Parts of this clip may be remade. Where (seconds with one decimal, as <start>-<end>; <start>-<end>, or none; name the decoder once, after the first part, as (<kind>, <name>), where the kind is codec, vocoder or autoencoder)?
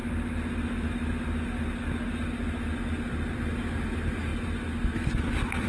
none